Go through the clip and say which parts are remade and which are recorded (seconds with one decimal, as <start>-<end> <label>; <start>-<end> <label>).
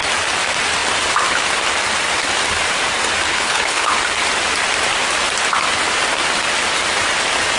0.0-3.3 recorded; 3.3-3.9 remade; 3.9-7.6 recorded